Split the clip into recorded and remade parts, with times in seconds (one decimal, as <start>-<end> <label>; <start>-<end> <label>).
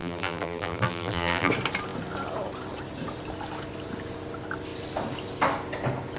0.0-1.5 remade; 1.5-6.2 recorded